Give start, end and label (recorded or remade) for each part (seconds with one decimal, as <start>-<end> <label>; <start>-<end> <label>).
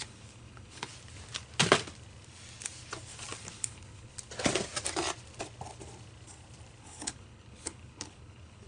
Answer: 0.0-0.9 remade; 0.9-3.4 recorded; 3.4-4.1 remade; 4.1-6.8 recorded; 6.8-8.7 remade